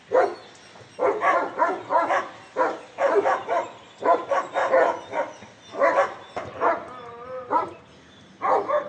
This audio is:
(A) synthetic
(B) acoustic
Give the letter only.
B